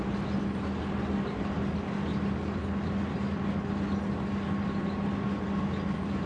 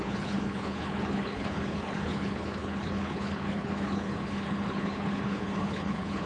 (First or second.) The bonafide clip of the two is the first